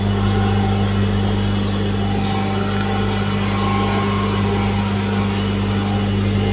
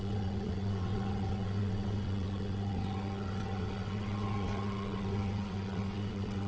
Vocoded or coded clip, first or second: second